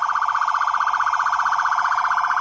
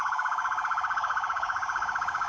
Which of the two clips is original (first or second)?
first